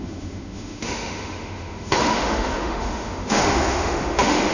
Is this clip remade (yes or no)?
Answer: yes